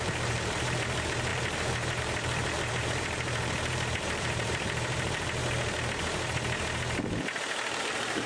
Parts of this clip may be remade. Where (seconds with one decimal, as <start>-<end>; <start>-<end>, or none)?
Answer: 0.0-5.4; 7.8-8.3